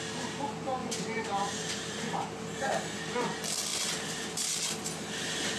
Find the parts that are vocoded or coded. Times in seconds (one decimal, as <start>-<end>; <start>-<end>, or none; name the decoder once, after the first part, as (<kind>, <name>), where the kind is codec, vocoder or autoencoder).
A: 0.8-2.7 (vocoder, BigVGAN v2); 3.7-4.6